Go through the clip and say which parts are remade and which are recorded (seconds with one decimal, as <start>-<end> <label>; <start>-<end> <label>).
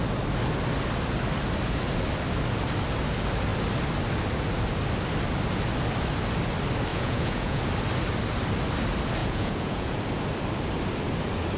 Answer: 0.0-6.9 recorded; 6.9-7.6 remade; 7.6-9.2 recorded; 9.2-10.0 remade; 10.0-11.6 recorded